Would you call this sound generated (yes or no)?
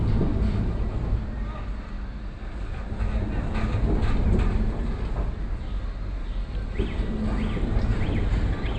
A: no